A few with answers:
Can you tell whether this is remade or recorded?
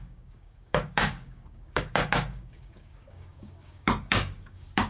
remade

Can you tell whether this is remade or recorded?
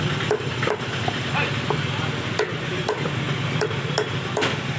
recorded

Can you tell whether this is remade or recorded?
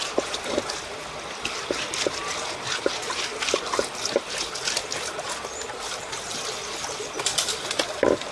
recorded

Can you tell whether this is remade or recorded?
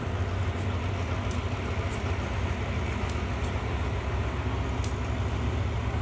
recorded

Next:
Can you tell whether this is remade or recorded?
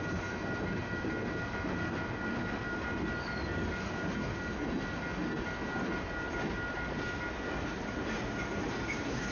recorded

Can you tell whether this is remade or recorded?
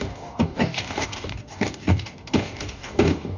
remade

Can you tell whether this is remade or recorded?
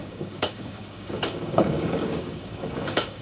remade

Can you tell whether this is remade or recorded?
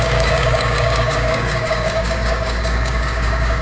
remade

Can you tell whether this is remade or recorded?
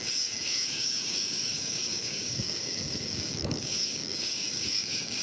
remade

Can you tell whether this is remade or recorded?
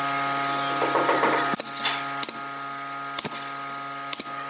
recorded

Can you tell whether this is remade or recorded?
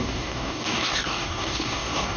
remade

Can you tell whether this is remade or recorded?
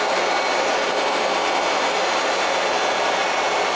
recorded